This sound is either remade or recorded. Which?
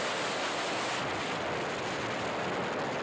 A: recorded